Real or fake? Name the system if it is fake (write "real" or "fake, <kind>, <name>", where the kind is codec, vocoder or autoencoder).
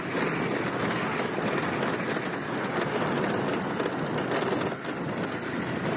real